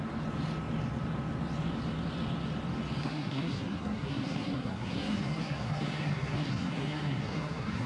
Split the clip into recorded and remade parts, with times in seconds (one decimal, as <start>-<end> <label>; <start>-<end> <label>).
0.0-3.0 recorded; 3.0-7.9 remade